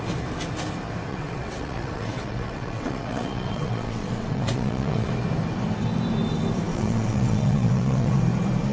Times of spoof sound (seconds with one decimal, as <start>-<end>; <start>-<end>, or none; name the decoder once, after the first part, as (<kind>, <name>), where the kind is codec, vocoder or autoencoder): 1.1-5.1 (vocoder, WaveNeXt); 6.7-8.2